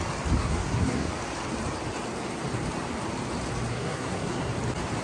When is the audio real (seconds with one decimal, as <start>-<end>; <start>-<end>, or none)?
0.0-0.4; 1.1-3.7; 4.5-5.0